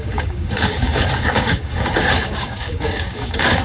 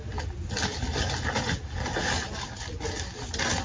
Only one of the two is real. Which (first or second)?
second